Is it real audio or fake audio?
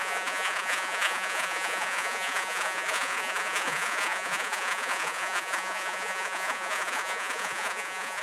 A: fake